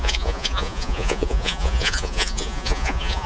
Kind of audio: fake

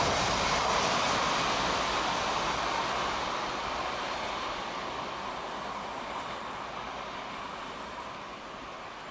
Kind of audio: real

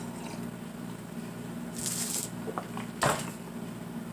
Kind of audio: real